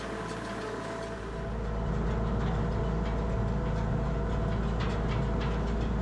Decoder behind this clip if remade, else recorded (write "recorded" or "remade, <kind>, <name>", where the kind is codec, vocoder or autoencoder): recorded